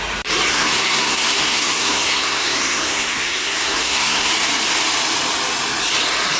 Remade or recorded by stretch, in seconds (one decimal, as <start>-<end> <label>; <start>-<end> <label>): 0.0-0.5 recorded; 0.5-4.3 remade; 4.3-6.4 recorded